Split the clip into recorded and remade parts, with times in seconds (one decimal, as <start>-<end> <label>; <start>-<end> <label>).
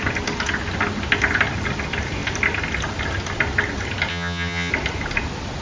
0.0-4.1 recorded; 4.1-4.7 remade; 4.7-5.6 recorded